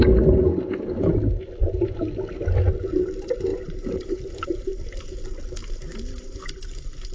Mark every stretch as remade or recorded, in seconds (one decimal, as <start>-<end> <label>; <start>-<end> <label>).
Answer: 0.0-3.5 recorded; 3.5-4.9 remade; 4.9-5.6 recorded; 5.6-6.4 remade; 6.4-7.1 recorded